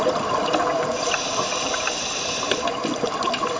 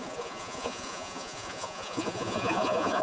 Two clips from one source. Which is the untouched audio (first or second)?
first